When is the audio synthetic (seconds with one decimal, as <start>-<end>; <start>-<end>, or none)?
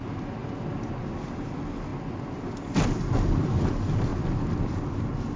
0.0-0.4; 1.0-4.1; 4.6-5.4